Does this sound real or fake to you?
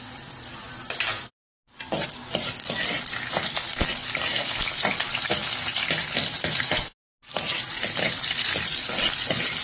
real